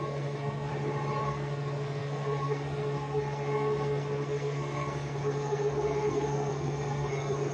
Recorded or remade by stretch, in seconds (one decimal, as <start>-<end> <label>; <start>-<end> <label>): 0.0-0.7 remade; 0.7-1.2 recorded; 1.2-7.5 remade